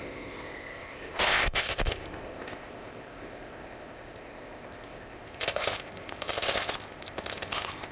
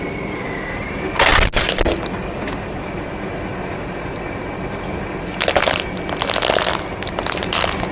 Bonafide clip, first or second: second